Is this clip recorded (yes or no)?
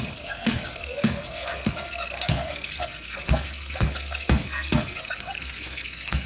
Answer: no